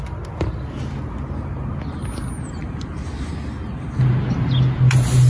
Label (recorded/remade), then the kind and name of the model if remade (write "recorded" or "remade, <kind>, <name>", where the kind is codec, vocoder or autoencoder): recorded